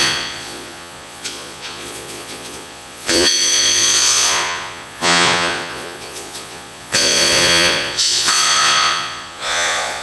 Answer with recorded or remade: remade